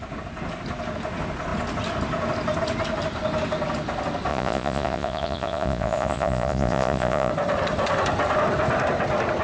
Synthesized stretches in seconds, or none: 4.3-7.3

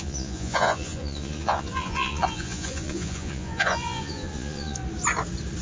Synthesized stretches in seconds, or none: 0.0-4.8

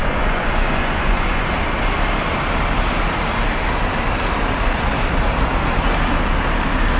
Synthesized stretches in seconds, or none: 0.0-1.5

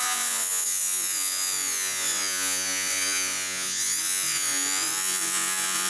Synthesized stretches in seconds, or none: 0.0-5.9

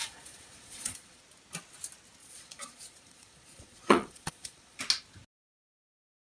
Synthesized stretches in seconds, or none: 0.0-1.2; 2.2-4.8

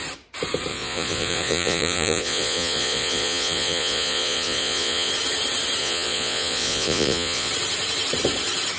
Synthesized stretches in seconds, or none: 0.7-5.1; 5.8-7.5

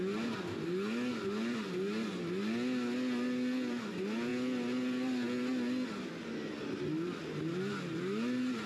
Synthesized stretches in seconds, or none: none

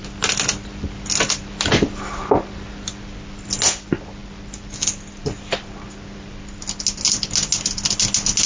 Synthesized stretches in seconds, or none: none